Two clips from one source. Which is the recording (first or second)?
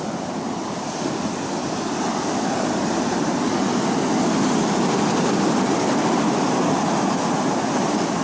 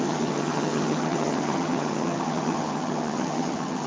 first